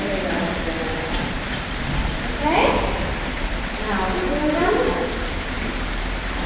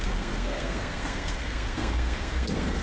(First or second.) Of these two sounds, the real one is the first